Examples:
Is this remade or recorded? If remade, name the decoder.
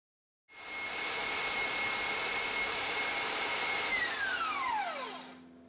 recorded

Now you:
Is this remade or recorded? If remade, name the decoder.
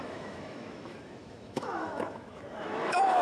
remade, autoencoder, DAC-VAE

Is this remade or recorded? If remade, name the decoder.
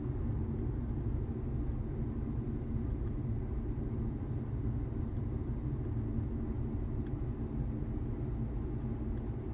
recorded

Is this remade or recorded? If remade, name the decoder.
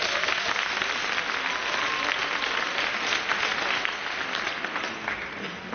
recorded